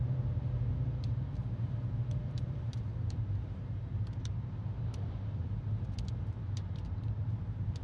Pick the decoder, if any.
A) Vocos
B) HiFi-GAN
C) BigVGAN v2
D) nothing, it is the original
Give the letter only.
C